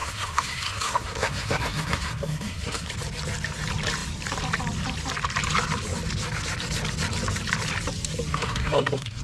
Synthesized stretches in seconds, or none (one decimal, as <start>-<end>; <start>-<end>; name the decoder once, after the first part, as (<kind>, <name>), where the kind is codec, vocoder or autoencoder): 0.0-2.9 (codec, SNAC); 8.3-9.2